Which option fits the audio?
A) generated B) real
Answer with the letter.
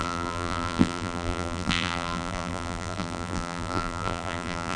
A